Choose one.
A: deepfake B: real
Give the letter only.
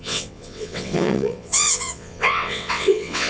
A